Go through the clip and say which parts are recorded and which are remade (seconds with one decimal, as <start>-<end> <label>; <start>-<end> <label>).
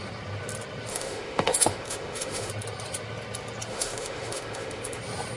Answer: 0.0-0.9 recorded; 0.9-2.5 remade; 2.5-3.7 recorded; 3.7-5.0 remade; 5.0-5.4 recorded